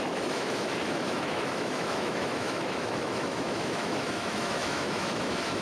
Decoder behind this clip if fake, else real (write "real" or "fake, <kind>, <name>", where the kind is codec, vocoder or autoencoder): fake, autoencoder, DAC-VAE